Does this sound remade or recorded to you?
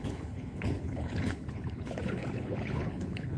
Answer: remade